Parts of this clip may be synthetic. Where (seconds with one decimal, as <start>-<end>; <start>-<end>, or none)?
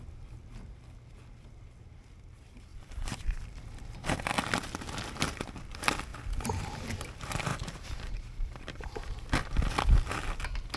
2.7-4.3; 6.1-6.7; 7.5-9.1